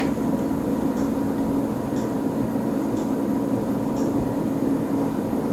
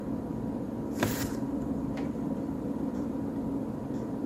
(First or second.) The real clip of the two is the first